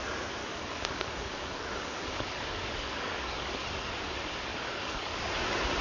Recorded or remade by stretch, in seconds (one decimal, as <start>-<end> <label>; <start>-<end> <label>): 0.0-0.4 recorded; 0.4-3.9 remade; 3.9-4.5 recorded; 4.5-5.3 remade; 5.3-5.8 recorded